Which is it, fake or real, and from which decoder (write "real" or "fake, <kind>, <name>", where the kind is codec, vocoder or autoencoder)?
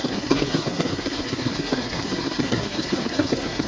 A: fake, codec, SNAC